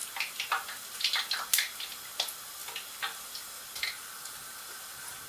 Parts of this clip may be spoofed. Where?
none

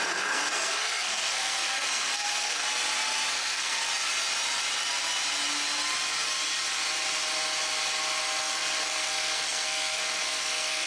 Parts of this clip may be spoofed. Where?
0.0-2.6; 3.3-3.8; 8.2-10.9

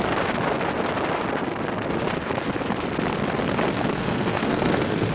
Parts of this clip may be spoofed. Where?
3.9-5.1

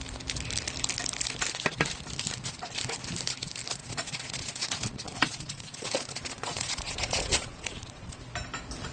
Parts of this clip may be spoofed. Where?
3.8-8.2

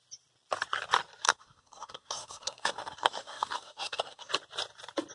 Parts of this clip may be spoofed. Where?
1.2-4.3

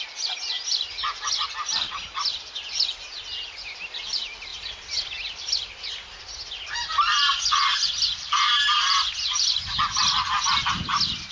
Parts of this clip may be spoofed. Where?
none